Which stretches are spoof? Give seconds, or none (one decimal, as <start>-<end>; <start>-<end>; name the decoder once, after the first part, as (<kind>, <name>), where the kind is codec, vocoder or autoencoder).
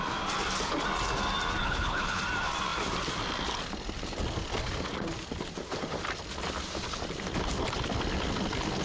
1.6-2.2 (codec, HILCodec)